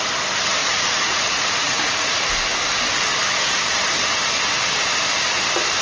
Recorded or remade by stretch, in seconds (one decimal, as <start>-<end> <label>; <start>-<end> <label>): 0.0-0.6 recorded; 0.6-2.2 remade; 2.2-5.8 recorded